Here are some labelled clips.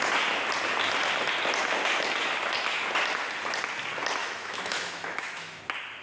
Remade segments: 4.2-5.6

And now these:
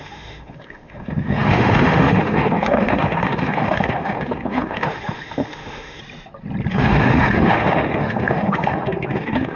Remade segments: 0.0-6.0; 6.7-9.6

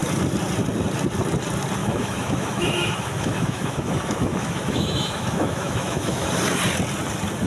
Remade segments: 1.8-6.3

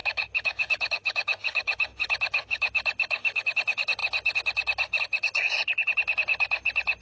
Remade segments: 0.0-2.7

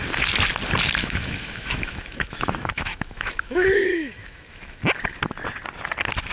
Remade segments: 1.0-4.8